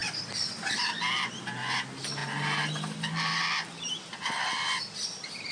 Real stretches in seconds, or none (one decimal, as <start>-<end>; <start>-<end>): 0.5-2.2; 3.9-5.5